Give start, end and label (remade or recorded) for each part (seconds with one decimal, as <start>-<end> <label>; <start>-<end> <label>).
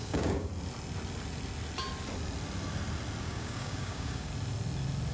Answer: 0.0-0.5 remade; 0.5-3.2 recorded; 3.2-4.3 remade; 4.3-5.1 recorded